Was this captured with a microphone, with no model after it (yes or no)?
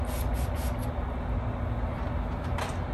yes